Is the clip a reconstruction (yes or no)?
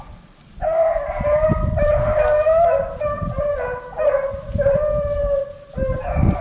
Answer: no